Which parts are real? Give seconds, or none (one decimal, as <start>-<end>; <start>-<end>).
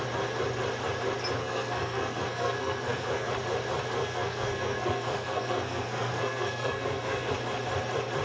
0.0-1.4; 3.3-4.0; 7.3-8.2